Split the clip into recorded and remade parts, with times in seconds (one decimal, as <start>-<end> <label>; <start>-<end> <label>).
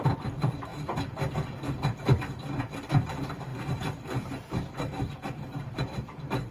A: 0.0-0.7 remade; 0.7-2.6 recorded; 2.6-6.5 remade